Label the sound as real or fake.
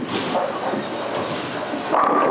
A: real